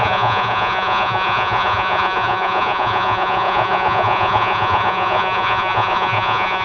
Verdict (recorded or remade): remade